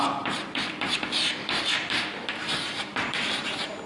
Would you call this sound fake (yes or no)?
yes